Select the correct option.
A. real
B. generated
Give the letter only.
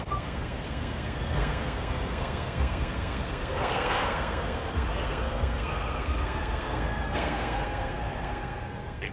B